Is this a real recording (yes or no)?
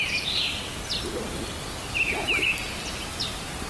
yes